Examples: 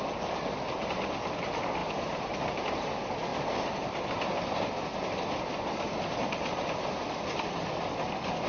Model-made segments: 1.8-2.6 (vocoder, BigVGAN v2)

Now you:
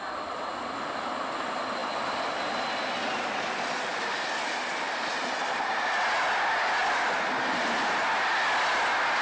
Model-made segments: none

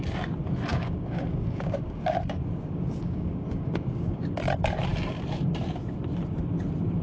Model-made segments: 0.7-4.2 (codec, DAC)